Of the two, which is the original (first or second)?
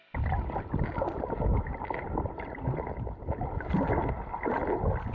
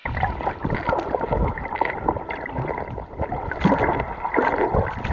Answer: first